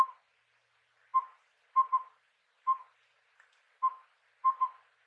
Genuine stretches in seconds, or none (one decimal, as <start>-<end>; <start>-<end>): 0.0-5.1